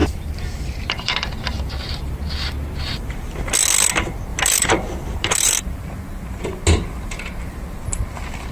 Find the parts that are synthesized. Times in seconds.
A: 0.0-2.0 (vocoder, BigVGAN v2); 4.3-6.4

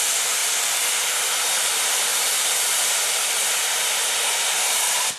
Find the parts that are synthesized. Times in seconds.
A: 0.0-5.2 (vocoder, BigVGAN v2)

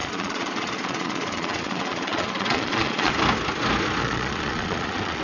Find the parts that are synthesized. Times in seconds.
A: 0.0-3.1 (vocoder, Vocos); 4.0-5.2

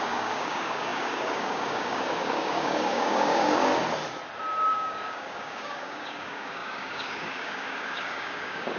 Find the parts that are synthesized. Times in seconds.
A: 0.0-3.7 (codec, DAC); 4.7-8.8